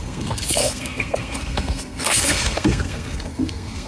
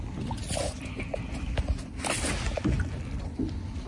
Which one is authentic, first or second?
second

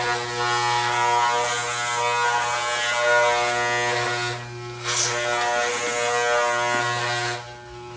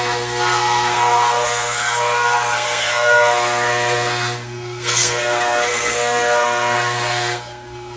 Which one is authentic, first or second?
first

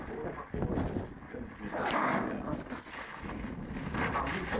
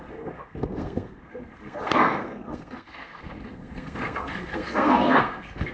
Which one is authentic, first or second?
first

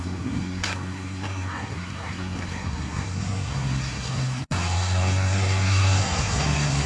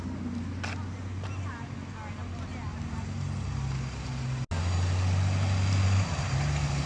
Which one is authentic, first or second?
second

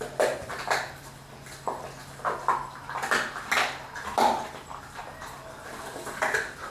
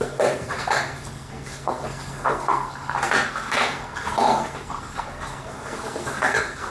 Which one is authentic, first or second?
first